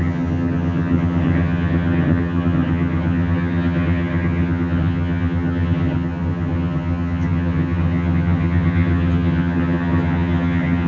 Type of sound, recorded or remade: remade